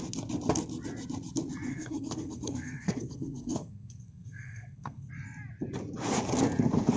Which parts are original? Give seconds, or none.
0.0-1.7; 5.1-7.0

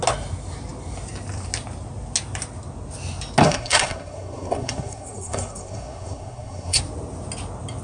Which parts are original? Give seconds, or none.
0.0-3.4; 6.8-7.8